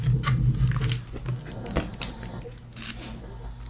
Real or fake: real